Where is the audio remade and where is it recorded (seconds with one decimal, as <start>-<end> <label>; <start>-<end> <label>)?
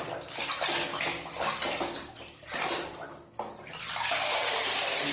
0.0-5.1 recorded